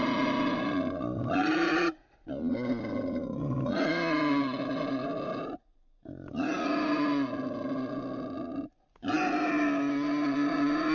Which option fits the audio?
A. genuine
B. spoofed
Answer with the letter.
A